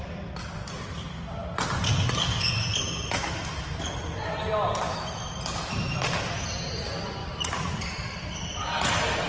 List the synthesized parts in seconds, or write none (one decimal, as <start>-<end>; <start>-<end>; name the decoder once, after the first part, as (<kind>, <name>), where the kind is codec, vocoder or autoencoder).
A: 7.2-7.8 (vocoder, Vocos)